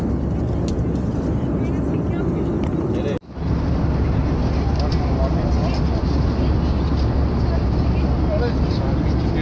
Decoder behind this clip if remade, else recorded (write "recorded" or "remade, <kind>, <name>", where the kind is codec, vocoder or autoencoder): recorded